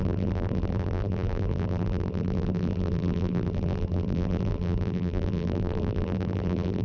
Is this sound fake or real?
fake